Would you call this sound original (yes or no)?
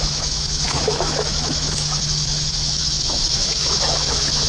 no